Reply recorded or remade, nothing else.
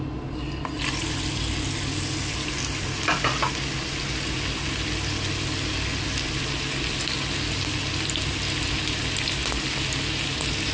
recorded